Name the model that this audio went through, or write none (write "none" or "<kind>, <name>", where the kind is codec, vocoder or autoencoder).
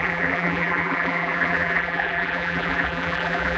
vocoder, BigVGAN v2